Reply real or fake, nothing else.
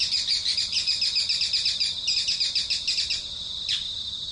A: real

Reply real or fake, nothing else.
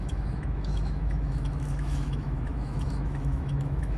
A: fake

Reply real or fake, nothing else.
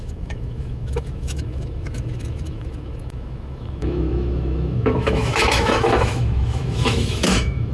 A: fake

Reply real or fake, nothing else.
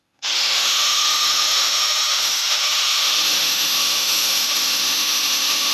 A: fake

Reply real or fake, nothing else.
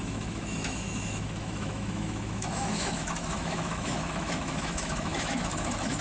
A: fake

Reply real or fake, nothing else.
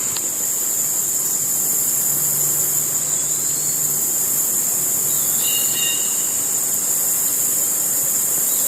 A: real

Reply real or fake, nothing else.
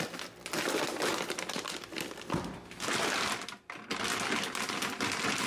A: real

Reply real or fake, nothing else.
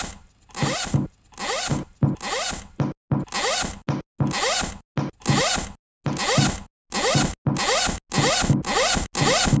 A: real